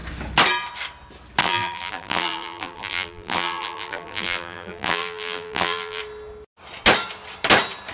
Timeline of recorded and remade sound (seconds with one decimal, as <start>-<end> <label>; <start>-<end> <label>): 0.0-1.4 recorded; 1.4-6.0 remade; 6.0-7.9 recorded